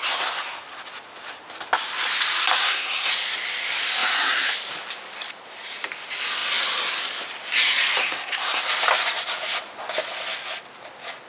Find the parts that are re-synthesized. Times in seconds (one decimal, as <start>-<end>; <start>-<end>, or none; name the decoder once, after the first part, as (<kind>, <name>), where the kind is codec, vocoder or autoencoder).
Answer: 2.6-3.1 (codec, SNAC); 8.0-8.6